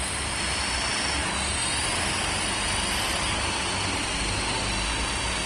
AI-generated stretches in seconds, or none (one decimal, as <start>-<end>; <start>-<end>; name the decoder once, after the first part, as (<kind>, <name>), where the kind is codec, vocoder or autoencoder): none